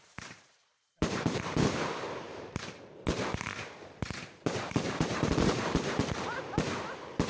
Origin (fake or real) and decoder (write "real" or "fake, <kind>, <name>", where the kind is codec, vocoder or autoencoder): fake, vocoder, BigVGAN v2